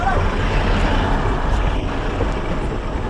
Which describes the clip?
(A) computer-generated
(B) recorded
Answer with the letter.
B